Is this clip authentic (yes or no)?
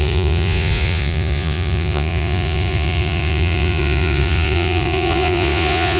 no